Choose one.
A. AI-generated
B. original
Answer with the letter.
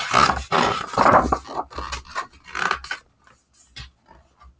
B